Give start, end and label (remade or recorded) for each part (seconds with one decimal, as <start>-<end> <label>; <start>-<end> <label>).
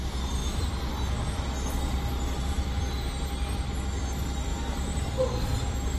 0.0-4.5 recorded; 4.5-5.6 remade; 5.6-6.0 recorded